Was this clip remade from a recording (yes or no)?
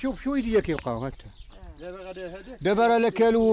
no